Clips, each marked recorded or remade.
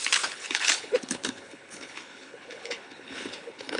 remade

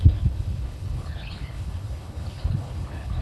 remade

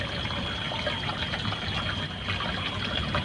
recorded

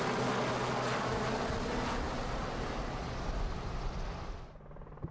recorded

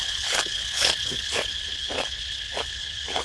remade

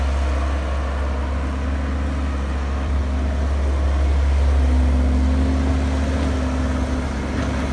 recorded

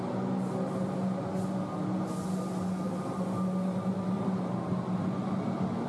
recorded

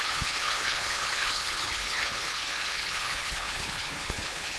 remade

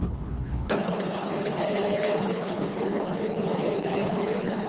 remade